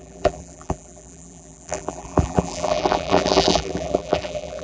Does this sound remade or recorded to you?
remade